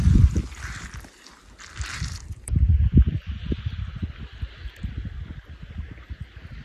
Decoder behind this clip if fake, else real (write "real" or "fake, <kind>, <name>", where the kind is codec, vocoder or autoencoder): real